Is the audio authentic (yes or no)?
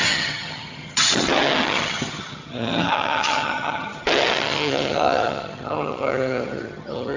no